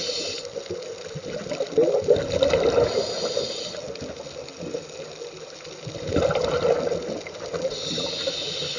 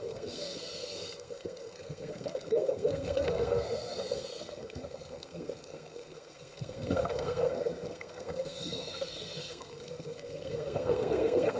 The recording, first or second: first